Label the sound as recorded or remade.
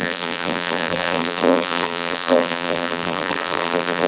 remade